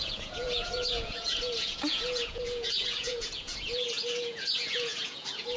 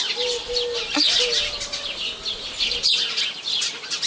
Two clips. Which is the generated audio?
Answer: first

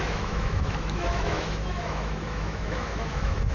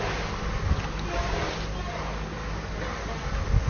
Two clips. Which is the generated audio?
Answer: first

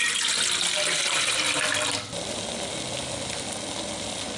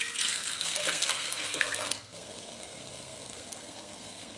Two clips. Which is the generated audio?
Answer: second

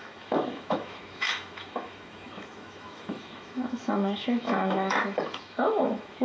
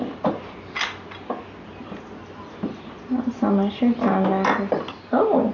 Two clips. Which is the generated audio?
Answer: first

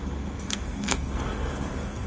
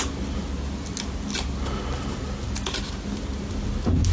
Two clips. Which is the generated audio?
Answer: first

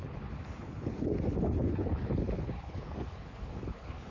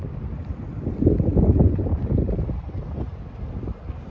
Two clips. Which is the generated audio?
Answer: first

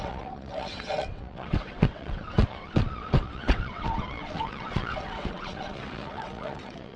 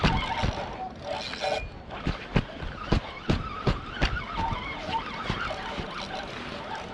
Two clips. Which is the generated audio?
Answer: first